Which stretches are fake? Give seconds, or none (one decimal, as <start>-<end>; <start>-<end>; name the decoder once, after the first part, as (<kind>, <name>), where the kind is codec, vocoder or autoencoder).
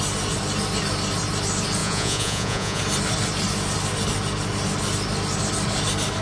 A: 1.8-2.8 (vocoder, Vocos)